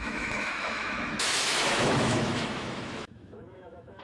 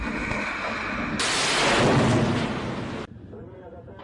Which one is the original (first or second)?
second